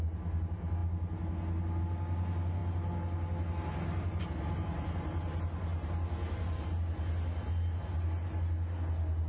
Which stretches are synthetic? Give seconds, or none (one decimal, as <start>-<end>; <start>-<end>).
none